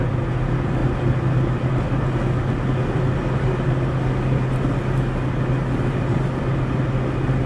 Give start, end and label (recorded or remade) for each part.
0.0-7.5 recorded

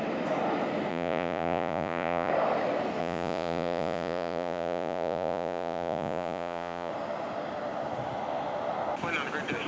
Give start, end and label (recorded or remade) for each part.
0.0-0.9 recorded; 0.9-2.3 remade; 2.3-3.0 recorded; 3.0-6.9 remade; 6.9-9.7 recorded

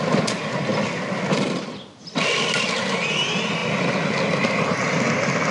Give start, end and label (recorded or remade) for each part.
0.0-5.5 recorded

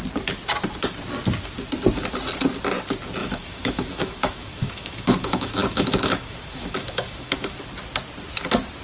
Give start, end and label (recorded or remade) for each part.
0.0-3.2 recorded; 3.2-7.6 remade; 7.6-8.8 recorded

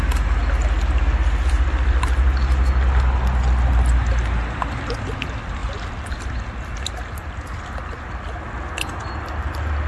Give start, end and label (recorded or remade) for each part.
0.0-9.9 recorded

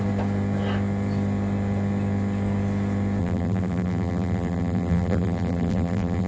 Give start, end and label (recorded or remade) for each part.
0.0-3.2 recorded; 3.2-6.3 remade

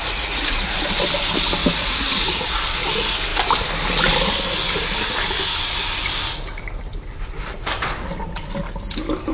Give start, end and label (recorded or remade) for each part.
0.0-0.7 remade; 0.7-1.6 recorded; 1.6-2.4 remade; 2.4-9.3 recorded

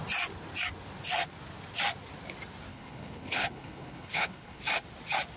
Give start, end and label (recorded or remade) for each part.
0.0-2.7 recorded; 2.7-4.6 remade; 4.6-5.4 recorded